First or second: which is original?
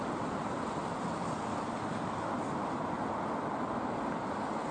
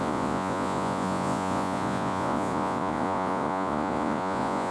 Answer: first